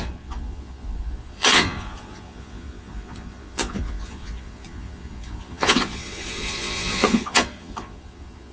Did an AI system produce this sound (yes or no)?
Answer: yes